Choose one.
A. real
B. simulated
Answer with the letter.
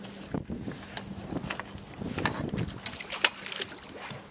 A